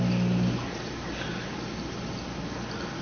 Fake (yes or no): no